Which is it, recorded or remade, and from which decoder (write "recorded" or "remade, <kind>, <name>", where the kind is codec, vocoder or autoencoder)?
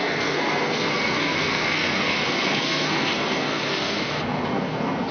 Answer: remade, codec, SNAC